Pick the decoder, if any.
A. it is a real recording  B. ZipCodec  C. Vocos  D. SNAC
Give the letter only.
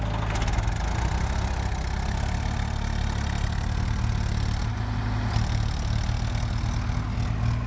A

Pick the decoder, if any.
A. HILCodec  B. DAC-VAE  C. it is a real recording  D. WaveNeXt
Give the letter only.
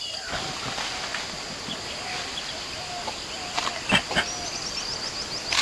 C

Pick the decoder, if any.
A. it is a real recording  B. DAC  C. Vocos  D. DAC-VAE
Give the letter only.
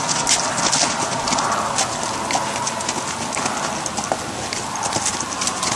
A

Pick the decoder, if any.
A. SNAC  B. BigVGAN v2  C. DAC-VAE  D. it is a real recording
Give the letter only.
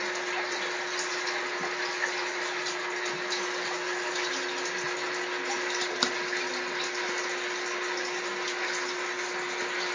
D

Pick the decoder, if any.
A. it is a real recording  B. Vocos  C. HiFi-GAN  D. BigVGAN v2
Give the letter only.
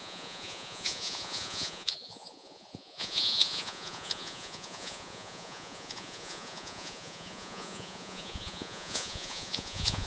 B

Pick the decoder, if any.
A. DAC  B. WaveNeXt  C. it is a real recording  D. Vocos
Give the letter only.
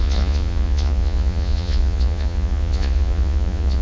D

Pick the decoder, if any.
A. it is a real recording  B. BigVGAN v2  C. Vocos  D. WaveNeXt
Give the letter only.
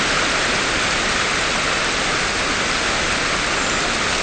A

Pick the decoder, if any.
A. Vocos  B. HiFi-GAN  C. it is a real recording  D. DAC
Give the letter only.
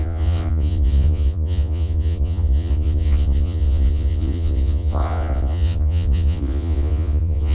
A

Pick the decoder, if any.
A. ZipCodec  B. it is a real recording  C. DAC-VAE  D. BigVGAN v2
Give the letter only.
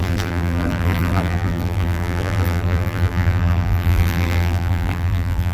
D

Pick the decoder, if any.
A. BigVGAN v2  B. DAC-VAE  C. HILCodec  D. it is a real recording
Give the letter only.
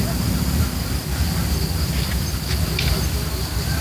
D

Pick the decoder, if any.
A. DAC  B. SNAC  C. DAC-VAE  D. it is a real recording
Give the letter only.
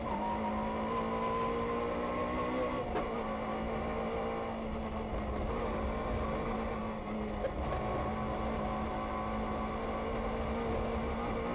D